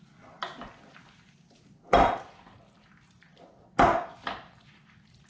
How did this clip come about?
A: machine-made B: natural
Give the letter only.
B